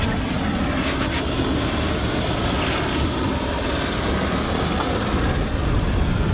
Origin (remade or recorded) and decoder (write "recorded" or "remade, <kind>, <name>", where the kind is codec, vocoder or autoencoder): recorded